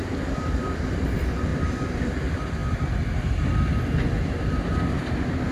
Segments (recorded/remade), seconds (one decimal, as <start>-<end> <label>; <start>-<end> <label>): 0.0-5.5 recorded